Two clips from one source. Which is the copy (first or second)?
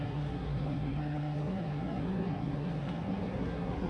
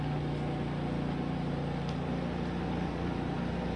first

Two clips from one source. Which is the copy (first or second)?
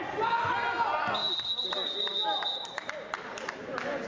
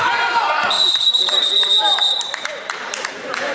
second